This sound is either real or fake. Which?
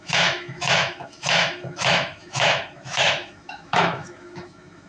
fake